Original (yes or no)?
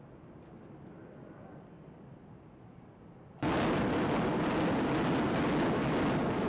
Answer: yes